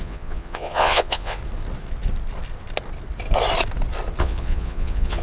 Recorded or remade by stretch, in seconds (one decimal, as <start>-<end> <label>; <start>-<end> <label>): 0.0-1.4 remade; 1.4-4.2 recorded; 4.2-5.2 remade